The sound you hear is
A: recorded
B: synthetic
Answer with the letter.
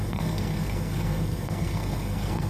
B